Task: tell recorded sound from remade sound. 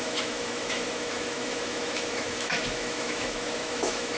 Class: remade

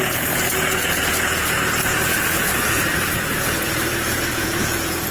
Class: remade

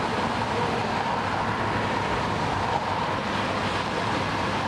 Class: recorded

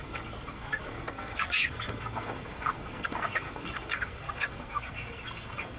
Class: remade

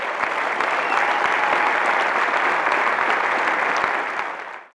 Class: recorded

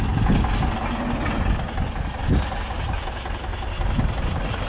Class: recorded